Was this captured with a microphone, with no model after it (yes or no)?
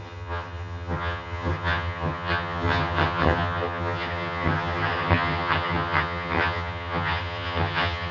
no